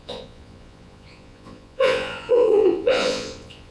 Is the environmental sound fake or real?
fake